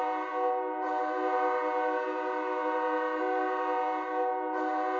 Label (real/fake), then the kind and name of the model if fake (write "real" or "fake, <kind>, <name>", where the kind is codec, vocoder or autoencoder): real